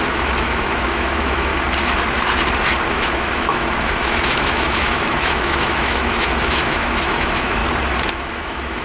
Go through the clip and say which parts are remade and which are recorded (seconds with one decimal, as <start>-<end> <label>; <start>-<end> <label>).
0.0-1.5 remade; 1.5-2.9 recorded; 2.9-7.6 remade; 7.6-8.1 recorded; 8.1-8.8 remade